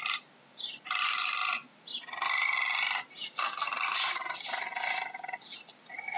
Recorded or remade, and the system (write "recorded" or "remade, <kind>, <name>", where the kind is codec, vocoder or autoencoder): recorded